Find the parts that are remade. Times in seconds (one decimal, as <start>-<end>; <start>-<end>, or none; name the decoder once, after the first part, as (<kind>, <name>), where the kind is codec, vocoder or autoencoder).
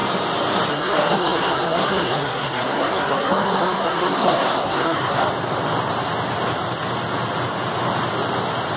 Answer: 0.7-5.2 (codec, SNAC)